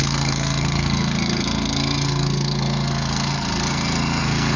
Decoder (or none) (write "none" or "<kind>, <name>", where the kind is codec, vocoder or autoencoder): codec, SNAC